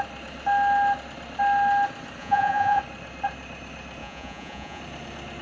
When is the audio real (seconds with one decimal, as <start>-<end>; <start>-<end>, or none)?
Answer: 0.0-2.2; 2.8-4.0; 4.8-5.4